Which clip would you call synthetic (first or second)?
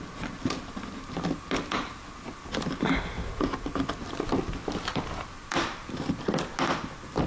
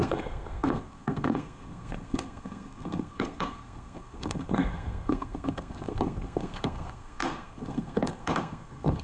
second